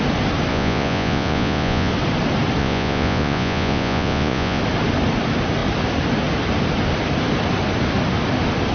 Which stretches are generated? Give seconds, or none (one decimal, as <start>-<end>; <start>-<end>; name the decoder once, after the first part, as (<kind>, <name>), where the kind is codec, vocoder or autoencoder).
0.5-1.9 (vocoder, Vocos); 2.6-4.6